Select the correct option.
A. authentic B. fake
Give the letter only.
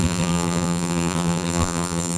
B